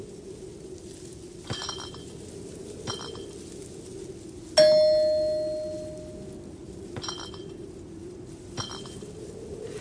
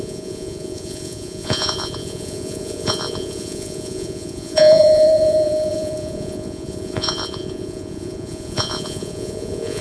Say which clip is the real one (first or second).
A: first